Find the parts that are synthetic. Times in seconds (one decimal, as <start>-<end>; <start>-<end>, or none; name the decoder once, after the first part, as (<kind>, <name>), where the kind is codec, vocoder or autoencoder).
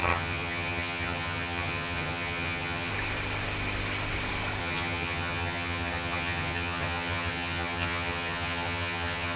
0.0-2.9 (vocoder, HiFi-GAN); 4.6-9.4